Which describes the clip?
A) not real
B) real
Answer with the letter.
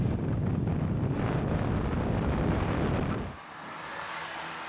B